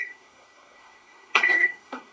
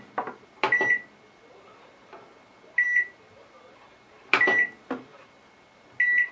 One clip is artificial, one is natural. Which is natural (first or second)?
second